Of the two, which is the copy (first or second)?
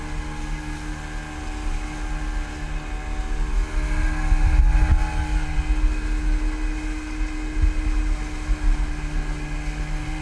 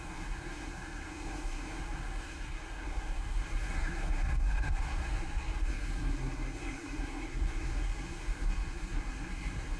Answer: second